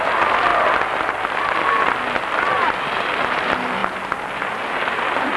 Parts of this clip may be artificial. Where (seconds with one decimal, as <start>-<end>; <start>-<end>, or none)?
none